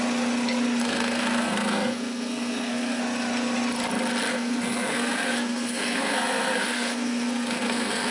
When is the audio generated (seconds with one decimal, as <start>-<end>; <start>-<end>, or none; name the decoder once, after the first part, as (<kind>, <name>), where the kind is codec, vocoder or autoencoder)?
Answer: 0.8-3.0 (codec, SNAC); 4.3-8.1